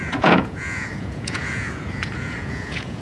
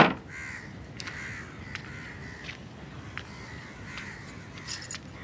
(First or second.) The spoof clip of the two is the first